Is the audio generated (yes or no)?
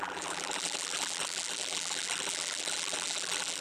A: yes